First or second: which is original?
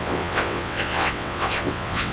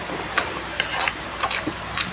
second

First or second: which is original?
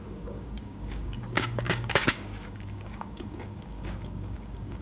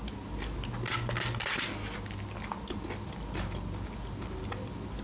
second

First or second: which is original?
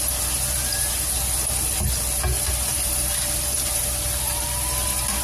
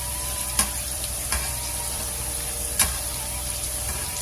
first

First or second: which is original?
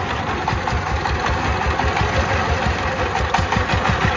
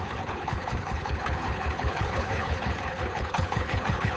first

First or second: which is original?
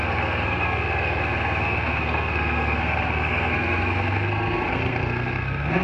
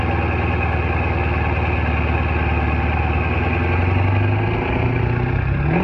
second